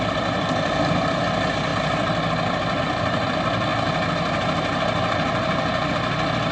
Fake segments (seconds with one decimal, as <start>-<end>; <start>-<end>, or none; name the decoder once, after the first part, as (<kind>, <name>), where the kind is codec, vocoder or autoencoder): 0.0-3.7 (vocoder, BigVGAN v2); 5.9-6.5